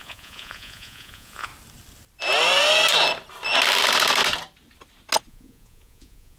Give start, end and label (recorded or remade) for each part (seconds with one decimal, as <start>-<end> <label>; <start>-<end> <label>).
0.0-1.5 remade; 1.5-5.3 recorded; 5.3-6.4 remade

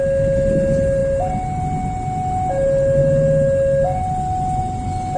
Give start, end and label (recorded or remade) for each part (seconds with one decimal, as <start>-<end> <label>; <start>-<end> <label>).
0.0-5.2 recorded

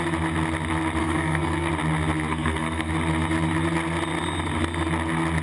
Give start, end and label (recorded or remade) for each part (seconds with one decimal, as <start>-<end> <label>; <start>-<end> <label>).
0.0-1.0 recorded; 1.0-1.7 remade; 1.7-2.3 recorded; 2.3-2.9 remade; 2.9-5.4 recorded

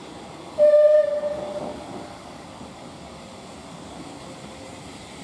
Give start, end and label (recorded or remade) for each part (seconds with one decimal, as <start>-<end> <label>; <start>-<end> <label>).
0.0-3.1 remade; 3.1-3.6 recorded; 3.6-4.2 remade; 4.2-5.2 recorded

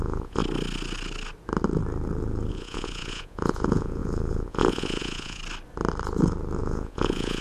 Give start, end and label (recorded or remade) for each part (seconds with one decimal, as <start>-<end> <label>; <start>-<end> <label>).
0.0-0.4 remade; 0.4-2.5 recorded; 2.5-5.4 remade; 5.4-6.6 recorded; 6.6-7.4 remade

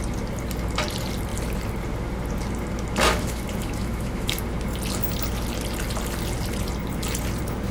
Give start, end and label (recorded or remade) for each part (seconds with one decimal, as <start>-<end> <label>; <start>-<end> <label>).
0.0-3.1 recorded; 3.1-4.4 remade; 4.4-7.7 recorded

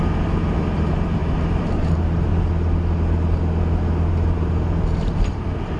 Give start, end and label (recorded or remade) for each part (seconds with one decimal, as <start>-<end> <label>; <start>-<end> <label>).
0.0-2.3 remade; 2.3-4.1 recorded; 4.1-5.8 remade

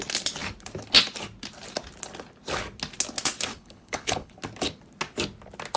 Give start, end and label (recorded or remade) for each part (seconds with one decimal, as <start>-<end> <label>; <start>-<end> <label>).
0.0-3.5 recorded; 3.5-4.4 remade; 4.4-5.8 recorded